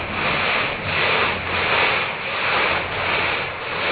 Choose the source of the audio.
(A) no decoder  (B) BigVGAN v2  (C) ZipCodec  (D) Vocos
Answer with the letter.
A